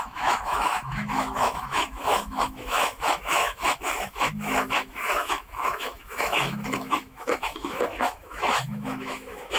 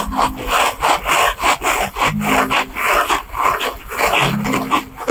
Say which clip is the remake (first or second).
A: first